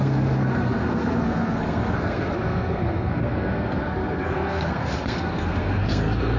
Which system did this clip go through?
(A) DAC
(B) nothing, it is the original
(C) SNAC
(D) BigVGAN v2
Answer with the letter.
C